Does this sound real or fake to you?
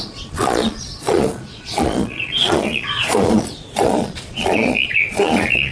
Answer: fake